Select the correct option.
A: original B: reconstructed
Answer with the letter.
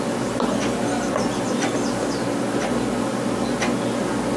A